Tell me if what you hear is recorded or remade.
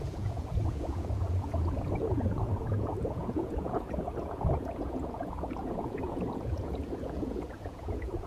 remade